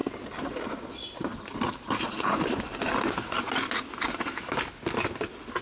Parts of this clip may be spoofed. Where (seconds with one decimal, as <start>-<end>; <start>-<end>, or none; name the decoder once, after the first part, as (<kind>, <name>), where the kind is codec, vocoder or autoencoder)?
none